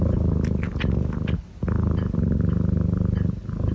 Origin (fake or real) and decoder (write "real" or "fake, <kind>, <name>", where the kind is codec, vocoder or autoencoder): real